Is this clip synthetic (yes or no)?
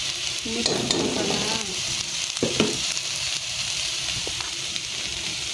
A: yes